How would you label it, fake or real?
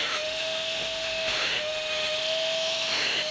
fake